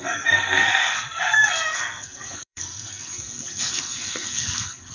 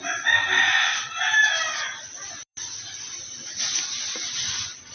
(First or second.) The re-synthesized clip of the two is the first